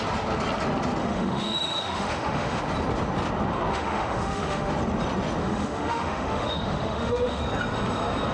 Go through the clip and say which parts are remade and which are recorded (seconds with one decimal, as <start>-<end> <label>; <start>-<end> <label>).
0.0-1.0 recorded; 1.0-2.6 remade; 2.6-3.7 recorded; 3.7-4.7 remade; 4.7-5.4 recorded; 5.4-7.4 remade; 7.4-8.3 recorded